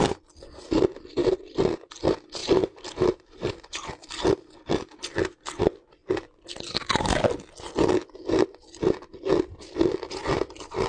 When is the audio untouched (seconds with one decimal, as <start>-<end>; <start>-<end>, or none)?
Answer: 0.0-2.4; 3.9-10.9